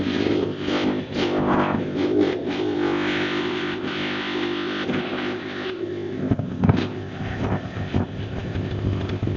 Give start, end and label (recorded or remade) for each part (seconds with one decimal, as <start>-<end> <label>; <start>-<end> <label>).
0.0-9.4 remade

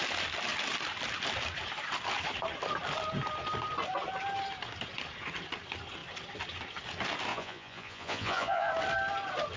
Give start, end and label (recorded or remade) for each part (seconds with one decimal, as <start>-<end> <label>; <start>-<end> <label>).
0.0-7.3 recorded; 7.3-8.7 remade; 8.7-9.6 recorded

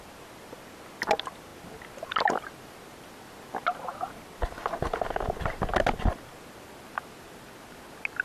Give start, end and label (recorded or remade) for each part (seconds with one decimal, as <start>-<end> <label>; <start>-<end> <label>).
0.0-8.2 recorded